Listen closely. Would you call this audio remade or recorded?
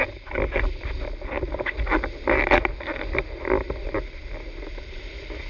remade